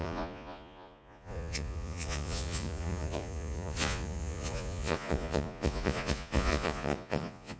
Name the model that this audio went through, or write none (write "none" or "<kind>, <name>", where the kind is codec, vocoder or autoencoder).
vocoder, Vocos